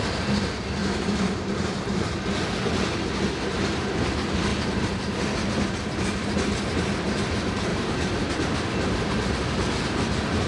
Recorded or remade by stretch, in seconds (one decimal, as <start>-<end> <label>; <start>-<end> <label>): 0.0-0.8 recorded; 0.8-2.0 remade; 2.0-4.5 recorded; 4.5-5.1 remade; 5.1-10.5 recorded